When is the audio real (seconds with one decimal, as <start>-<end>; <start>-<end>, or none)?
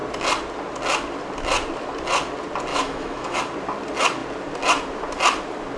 0.0-2.7; 3.4-5.8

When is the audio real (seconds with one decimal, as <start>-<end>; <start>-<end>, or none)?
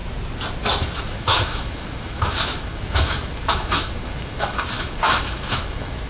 0.0-1.0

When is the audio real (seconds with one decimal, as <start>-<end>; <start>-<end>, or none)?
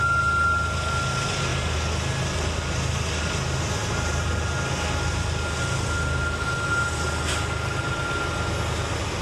0.0-9.2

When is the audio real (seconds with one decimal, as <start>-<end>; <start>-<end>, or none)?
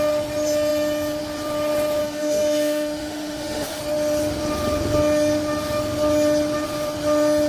0.0-2.0; 3.8-7.5